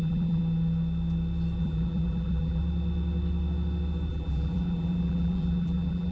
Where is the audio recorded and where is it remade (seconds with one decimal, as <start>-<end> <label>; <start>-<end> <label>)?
0.0-0.4 remade; 0.4-1.6 recorded; 1.6-2.6 remade; 2.6-4.1 recorded; 4.1-6.1 remade